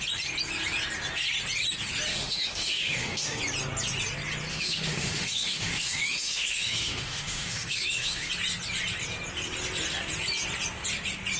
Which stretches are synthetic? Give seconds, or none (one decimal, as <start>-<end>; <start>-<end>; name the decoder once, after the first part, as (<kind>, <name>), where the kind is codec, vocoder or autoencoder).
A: 2.1-3.4 (autoencoder, DAC-VAE); 4.5-8.3